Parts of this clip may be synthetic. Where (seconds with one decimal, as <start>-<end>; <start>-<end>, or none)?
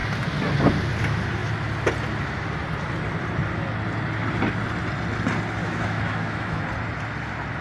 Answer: 5.6-6.6